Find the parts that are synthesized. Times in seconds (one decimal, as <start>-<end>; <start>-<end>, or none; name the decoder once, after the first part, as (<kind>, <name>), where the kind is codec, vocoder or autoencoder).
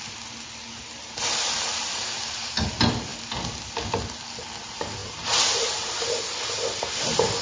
none